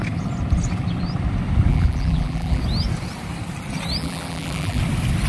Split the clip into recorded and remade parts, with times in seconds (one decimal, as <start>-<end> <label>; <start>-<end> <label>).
0.0-1.7 recorded; 1.7-2.6 remade; 2.6-4.0 recorded; 4.0-4.8 remade; 4.8-5.3 recorded